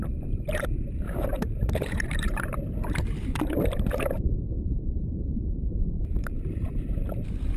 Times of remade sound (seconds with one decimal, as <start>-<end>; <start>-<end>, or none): 0.0-7.6